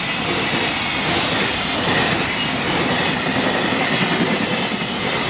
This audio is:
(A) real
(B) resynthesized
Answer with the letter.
A